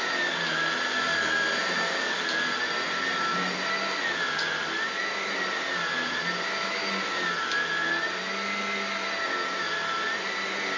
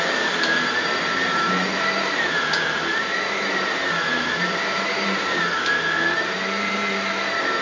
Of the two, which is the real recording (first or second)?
first